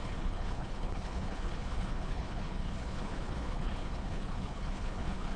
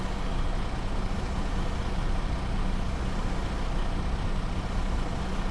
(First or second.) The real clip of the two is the second